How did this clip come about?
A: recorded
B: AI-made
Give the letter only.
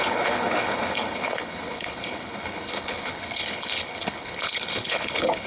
B